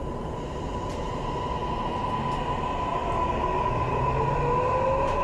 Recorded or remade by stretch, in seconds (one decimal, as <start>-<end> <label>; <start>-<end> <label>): 0.0-5.2 recorded